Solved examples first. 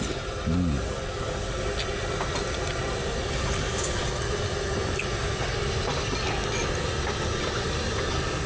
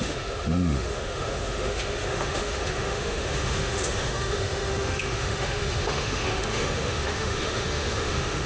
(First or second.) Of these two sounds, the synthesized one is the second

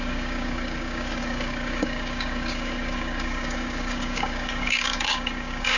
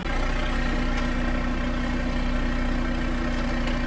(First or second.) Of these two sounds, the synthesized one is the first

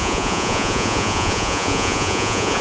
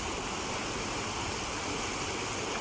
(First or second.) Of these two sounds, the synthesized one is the first